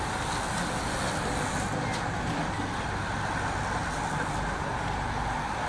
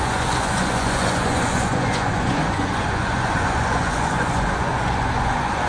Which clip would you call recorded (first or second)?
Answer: first